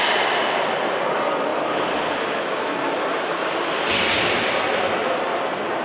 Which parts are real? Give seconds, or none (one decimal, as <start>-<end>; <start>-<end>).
0.0-5.8